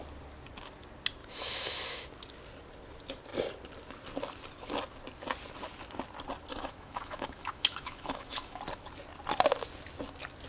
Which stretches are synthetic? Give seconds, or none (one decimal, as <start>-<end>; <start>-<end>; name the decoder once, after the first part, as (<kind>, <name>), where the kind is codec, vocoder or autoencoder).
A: 1.2-2.1 (autoencoder, DAC-VAE); 6.5-8.6